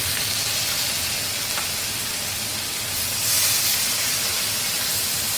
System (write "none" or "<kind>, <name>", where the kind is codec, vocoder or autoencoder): none